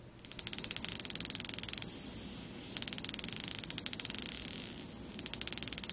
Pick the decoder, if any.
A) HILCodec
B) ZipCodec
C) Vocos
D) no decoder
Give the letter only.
D